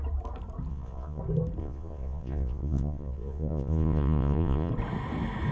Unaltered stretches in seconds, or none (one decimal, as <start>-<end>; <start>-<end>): 0.0-0.7; 1.2-1.6; 4.7-5.5